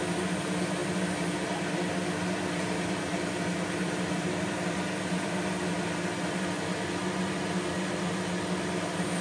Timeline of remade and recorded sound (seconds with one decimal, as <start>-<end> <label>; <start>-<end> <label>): 0.0-9.2 recorded